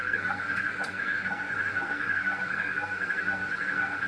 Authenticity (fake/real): fake